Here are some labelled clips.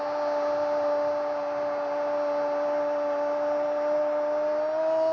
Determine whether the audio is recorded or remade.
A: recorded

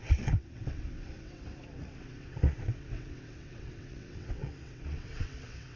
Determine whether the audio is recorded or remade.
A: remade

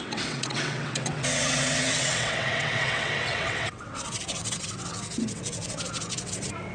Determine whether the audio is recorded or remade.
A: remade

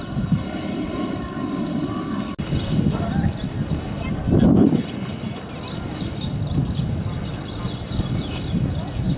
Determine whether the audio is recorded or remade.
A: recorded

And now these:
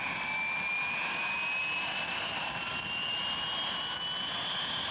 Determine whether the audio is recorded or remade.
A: recorded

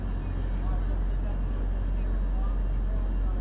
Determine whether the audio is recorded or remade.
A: recorded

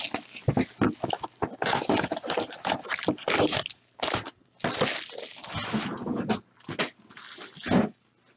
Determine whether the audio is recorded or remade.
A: recorded